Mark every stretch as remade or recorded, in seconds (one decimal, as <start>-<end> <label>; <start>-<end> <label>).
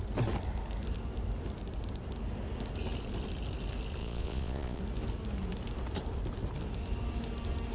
0.0-4.0 recorded; 4.0-4.8 remade; 4.8-7.7 recorded